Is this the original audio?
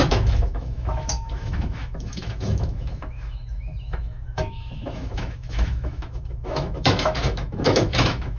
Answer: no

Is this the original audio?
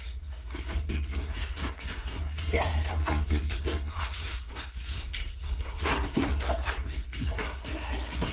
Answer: no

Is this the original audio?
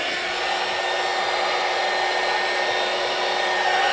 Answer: yes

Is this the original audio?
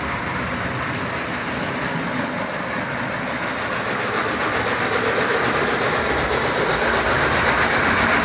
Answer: yes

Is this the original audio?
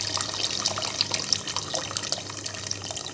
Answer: yes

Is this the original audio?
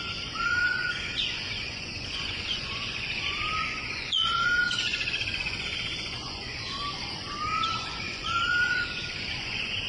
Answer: no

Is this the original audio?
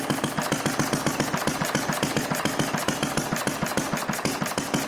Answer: yes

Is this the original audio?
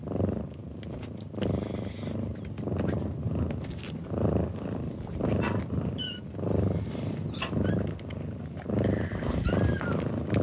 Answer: yes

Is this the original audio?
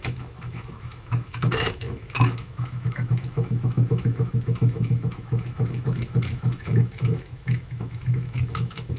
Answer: no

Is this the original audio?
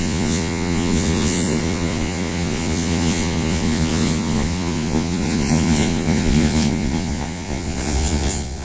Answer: no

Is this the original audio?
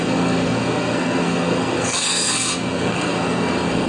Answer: no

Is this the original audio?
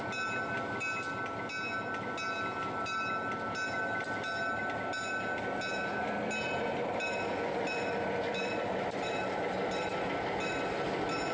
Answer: yes